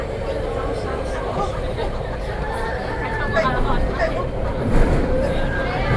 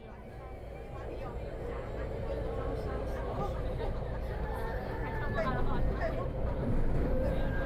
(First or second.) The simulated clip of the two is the first